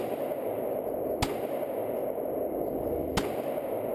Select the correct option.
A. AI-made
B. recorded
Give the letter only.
B